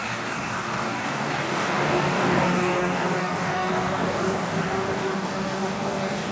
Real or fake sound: fake